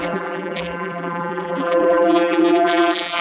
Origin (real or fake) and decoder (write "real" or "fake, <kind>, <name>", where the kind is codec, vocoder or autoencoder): fake, vocoder, BigVGAN v2